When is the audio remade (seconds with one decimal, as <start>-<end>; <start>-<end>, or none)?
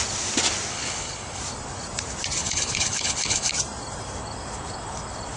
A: 0.7-1.4; 2.4-3.5